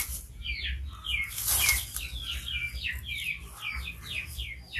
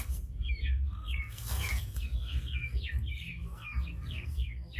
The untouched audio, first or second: first